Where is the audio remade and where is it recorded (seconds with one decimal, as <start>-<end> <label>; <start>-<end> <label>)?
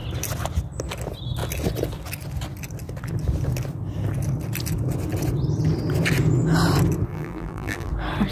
0.0-7.1 recorded; 7.1-7.9 remade; 7.9-8.3 recorded